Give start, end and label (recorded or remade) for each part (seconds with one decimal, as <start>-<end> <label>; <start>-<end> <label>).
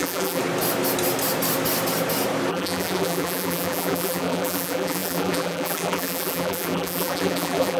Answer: 0.0-0.4 remade; 0.4-2.5 recorded; 2.5-7.8 remade